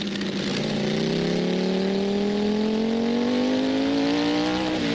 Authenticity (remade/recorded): recorded